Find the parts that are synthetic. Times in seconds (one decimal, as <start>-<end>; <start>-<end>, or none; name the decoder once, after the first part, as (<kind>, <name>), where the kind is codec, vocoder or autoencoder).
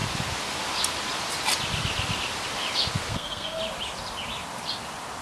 3.1-3.6 (codec, SNAC)